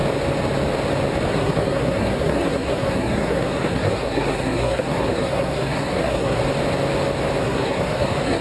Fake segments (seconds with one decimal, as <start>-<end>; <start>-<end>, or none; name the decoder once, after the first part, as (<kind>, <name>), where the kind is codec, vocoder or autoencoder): 1.3-6.4 (codec, SNAC); 7.4-8.4

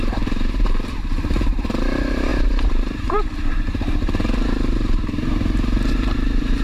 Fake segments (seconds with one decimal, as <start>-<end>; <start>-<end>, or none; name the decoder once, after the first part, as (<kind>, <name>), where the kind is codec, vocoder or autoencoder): 0.0-6.6 (vocoder, BigVGAN v2)

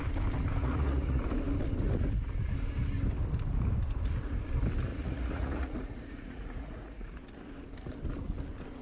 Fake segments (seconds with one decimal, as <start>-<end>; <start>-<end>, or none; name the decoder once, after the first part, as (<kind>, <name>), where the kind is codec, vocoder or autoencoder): 0.6-1.2 (vocoder, Vocos); 4.9-7.2

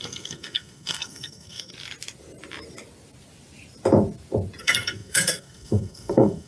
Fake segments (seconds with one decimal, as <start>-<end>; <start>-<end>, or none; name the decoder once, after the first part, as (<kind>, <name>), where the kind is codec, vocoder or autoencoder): 0.0-1.7 (codec, SNAC); 4.6-6.5

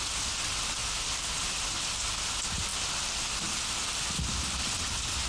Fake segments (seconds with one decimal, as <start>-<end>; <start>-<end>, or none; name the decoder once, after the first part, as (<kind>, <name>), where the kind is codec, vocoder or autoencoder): 2.7-4.3 (vocoder, BigVGAN v2)

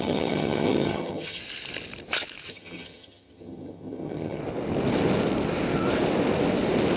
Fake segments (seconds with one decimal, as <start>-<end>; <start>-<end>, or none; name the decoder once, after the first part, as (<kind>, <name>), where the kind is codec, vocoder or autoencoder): 0.0-1.4 (vocoder, HiFi-GAN); 2.5-4.4

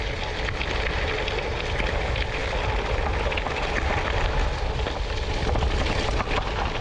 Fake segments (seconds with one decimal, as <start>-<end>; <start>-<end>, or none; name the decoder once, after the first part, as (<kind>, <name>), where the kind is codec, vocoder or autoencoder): none

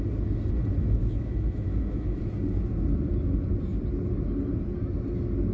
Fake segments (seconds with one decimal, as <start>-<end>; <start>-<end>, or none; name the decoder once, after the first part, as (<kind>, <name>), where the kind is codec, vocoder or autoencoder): 0.8-2.2 (autoencoder, DAC-VAE)